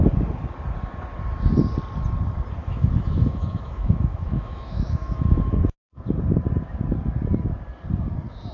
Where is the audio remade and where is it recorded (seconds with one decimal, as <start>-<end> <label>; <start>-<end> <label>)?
0.0-2.6 recorded; 2.6-5.4 remade; 5.4-8.5 recorded